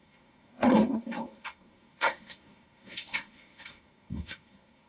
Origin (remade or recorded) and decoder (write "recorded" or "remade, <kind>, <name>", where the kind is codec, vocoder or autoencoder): remade, codec, SNAC